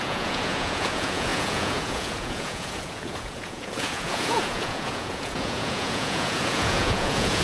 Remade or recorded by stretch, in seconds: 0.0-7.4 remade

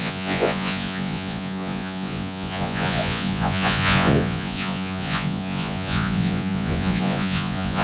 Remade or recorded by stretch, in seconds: 0.0-7.8 remade

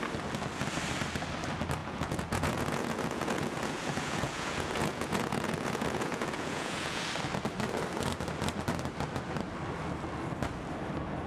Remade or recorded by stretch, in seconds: 0.0-1.8 recorded; 1.8-7.0 remade; 7.0-11.3 recorded

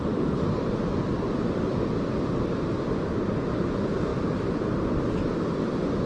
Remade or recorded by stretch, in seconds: 0.0-6.1 recorded

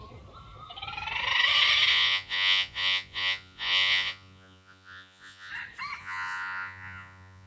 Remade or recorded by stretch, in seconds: 0.0-1.9 recorded; 1.9-5.5 remade; 5.5-6.0 recorded; 6.0-7.5 remade

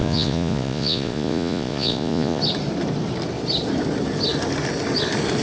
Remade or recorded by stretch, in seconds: 0.0-2.4 remade; 2.4-5.4 recorded